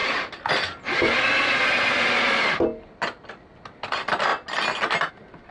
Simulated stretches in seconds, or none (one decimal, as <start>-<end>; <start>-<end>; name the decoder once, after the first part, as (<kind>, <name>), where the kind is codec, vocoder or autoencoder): none